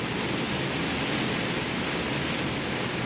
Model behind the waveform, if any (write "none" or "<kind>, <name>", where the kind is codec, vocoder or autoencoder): none